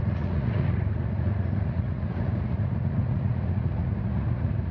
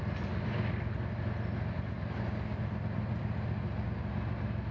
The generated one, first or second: first